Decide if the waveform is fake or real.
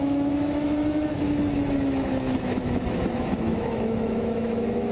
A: fake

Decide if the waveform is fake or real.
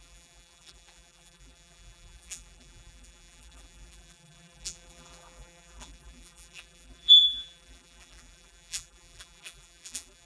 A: fake